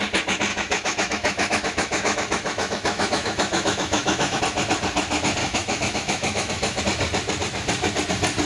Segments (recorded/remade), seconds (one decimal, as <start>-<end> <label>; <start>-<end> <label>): 0.0-0.5 recorded; 0.5-4.4 remade; 4.4-5.4 recorded; 5.4-6.8 remade; 6.8-8.5 recorded